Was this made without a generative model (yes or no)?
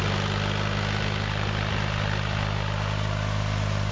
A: yes